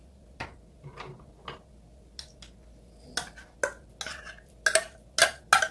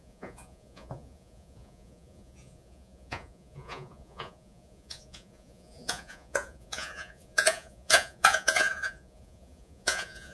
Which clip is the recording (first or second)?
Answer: first